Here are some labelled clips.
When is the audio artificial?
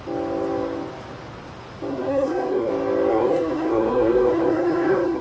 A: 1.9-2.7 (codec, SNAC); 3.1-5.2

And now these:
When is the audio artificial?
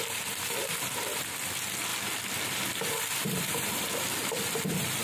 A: 1.9-5.0 (vocoder, BigVGAN v2)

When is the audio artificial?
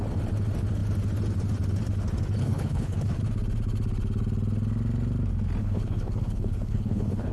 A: 2.4-3.2 (codec, HILCodec); 5.6-7.3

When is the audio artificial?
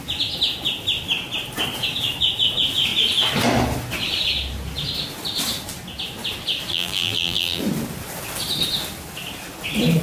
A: 6.7-7.6 (vocoder, BigVGAN v2)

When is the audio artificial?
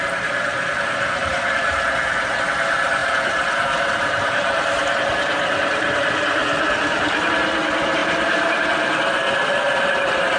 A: 1.2-1.8 (vocoder, BigVGAN v2); 3.0-7.3; 8.0-8.6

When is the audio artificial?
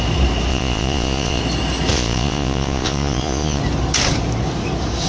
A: 0.5-1.4 (vocoder, Vocos); 1.9-3.6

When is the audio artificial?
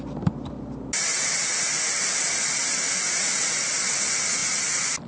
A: none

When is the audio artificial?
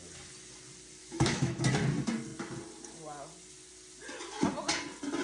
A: 1.0-1.6 (autoencoder, DAC-VAE)